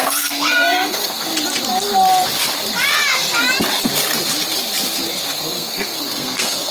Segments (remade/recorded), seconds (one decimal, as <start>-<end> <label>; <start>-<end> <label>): 0.0-1.3 remade; 1.3-5.3 recorded; 5.3-6.7 remade